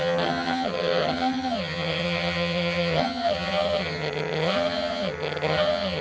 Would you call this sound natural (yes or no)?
no